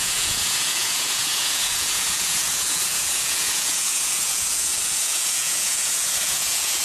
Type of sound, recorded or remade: remade